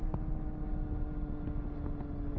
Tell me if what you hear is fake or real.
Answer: real